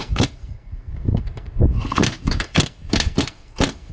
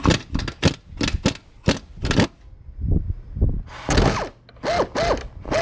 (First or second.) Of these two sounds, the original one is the second